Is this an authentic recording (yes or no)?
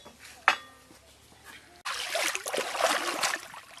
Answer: yes